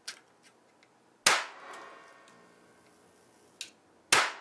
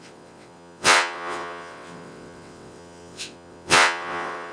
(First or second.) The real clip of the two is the first